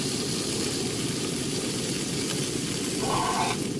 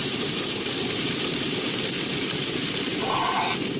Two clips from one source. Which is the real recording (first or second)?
first